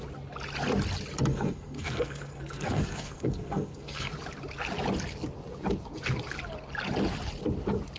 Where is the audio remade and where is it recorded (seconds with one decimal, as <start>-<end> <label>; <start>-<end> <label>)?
0.0-1.3 recorded; 1.3-4.1 remade; 4.1-8.0 recorded